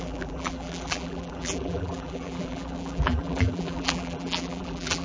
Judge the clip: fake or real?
fake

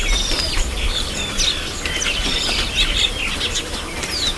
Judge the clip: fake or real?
real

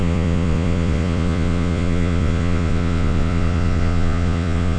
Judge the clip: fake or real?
fake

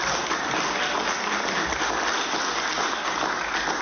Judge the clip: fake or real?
real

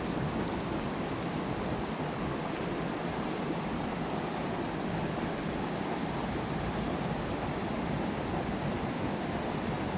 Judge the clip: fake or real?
real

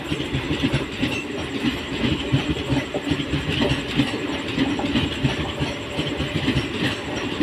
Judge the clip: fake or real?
real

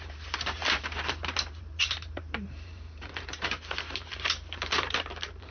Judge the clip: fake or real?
fake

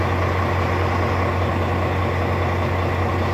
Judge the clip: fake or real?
real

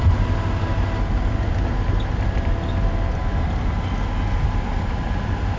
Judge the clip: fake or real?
real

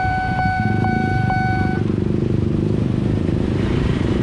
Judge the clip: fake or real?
fake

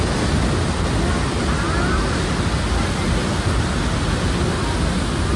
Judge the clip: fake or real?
real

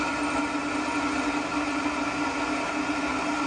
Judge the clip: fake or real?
real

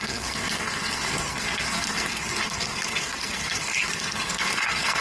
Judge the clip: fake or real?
fake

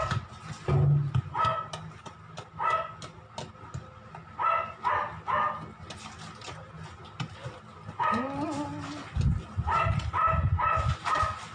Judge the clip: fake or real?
real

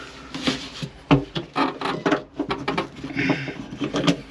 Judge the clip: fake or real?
real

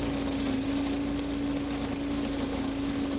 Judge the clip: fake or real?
real